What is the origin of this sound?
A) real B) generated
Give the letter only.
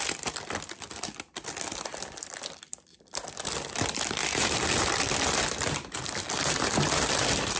B